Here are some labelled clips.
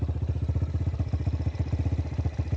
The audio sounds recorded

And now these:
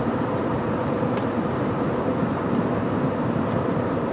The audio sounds remade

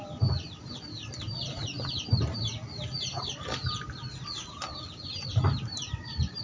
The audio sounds recorded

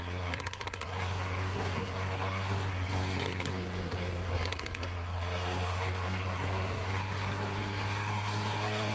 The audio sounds remade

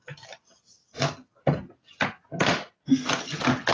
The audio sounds recorded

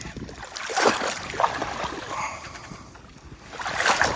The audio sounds recorded